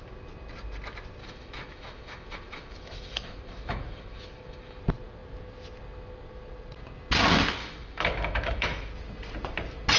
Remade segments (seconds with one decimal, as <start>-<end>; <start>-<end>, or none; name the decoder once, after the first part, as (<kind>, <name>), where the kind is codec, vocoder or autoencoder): 1.2-4.8 (autoencoder, DAC-VAE); 7.6-8.9